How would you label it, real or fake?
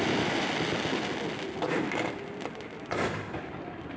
real